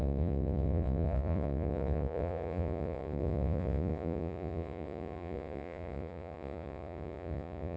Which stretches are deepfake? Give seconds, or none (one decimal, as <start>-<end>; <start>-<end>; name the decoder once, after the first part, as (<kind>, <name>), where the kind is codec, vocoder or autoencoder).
0.0-7.8 (vocoder, Vocos)